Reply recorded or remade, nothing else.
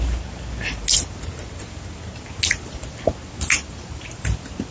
recorded